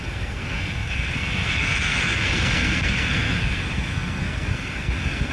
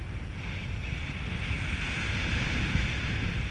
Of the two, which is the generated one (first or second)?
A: first